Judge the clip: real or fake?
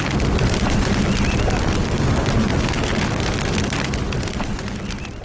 real